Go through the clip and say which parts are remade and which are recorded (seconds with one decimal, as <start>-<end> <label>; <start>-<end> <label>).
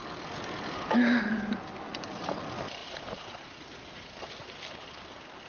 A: 0.0-2.8 recorded; 2.8-4.1 remade; 4.1-5.5 recorded